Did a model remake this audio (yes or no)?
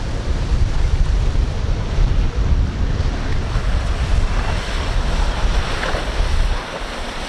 no